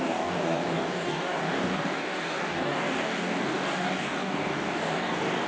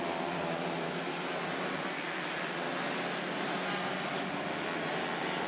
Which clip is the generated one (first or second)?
first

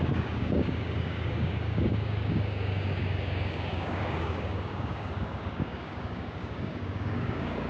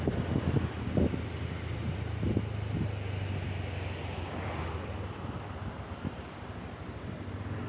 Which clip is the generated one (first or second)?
first